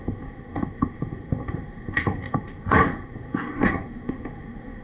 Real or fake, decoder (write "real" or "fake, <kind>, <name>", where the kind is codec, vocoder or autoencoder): fake, codec, SNAC